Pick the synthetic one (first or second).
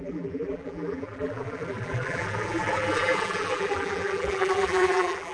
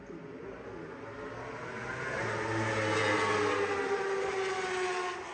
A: first